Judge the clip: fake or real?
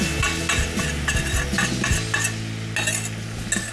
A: real